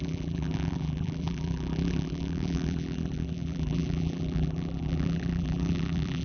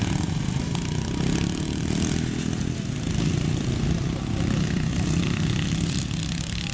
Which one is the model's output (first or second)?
first